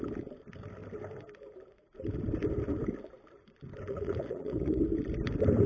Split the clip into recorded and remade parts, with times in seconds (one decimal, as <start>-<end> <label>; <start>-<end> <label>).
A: 0.0-3.9 recorded; 3.9-4.8 remade; 4.8-5.7 recorded